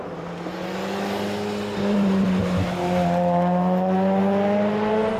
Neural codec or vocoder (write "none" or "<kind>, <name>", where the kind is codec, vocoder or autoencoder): none